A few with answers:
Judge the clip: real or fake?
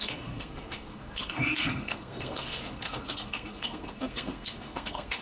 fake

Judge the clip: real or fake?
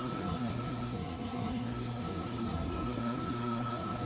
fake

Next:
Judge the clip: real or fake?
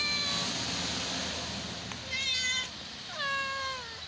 real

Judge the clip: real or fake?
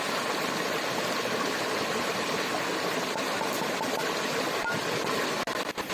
real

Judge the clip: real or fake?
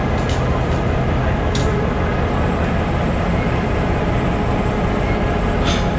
real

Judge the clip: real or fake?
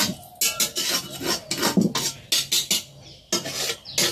real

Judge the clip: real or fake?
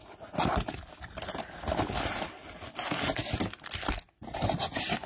real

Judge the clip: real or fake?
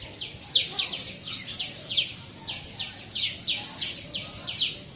real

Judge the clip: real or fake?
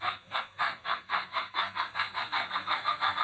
fake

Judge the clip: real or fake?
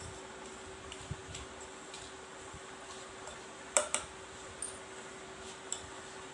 real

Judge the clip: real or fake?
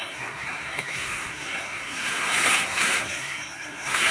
fake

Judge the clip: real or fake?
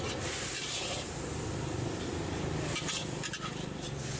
real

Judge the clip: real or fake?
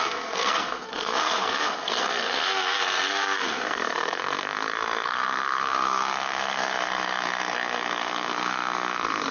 fake